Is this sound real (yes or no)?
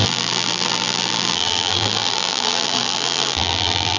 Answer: no